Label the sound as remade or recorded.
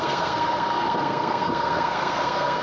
remade